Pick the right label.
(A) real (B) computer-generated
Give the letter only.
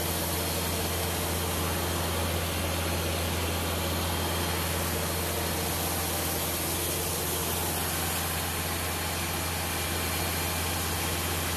A